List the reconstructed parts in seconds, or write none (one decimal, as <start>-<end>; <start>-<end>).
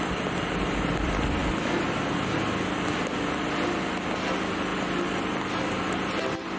none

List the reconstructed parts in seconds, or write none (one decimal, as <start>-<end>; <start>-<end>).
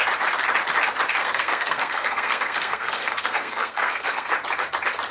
1.2-4.3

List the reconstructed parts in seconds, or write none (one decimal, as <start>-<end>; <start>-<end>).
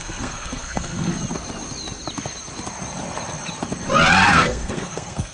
0.0-1.1; 4.3-5.3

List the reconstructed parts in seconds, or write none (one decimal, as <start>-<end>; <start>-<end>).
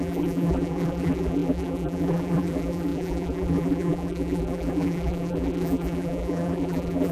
0.0-7.1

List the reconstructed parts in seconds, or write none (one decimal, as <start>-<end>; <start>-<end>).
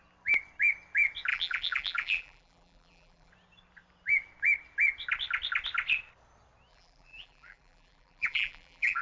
1.3-3.3; 6.7-9.0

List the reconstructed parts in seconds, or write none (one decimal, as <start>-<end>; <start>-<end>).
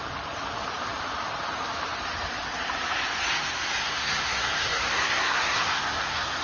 3.8-6.4